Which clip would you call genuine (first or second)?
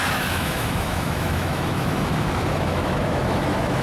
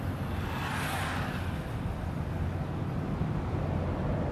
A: second